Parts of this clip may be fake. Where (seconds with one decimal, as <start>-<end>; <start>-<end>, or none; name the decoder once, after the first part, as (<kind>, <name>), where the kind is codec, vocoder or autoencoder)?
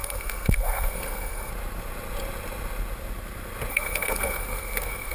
0.0-1.5 (codec, SNAC); 3.7-5.1